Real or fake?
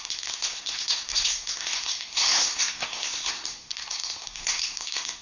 fake